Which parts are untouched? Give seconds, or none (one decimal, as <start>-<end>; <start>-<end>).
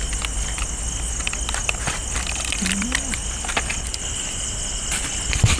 0.0-5.6